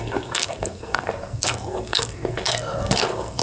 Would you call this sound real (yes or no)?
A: no